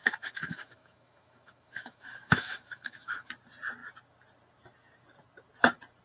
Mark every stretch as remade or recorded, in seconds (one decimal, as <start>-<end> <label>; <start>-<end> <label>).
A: 0.0-3.3 remade; 3.3-6.0 recorded